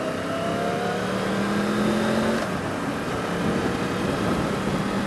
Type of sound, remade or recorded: recorded